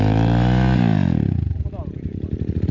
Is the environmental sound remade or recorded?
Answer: recorded